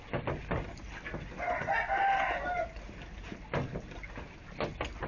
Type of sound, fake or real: real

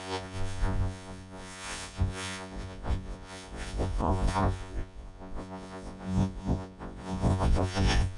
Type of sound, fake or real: fake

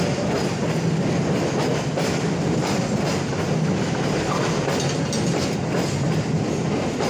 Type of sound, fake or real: real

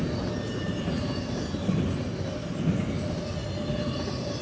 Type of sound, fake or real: real